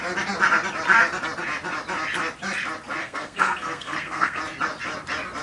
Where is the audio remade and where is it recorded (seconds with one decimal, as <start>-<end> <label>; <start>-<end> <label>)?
0.0-3.0 recorded; 3.0-4.4 remade; 4.4-5.4 recorded